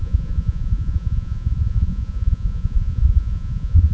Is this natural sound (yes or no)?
no